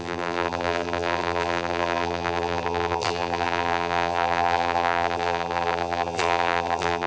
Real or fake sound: fake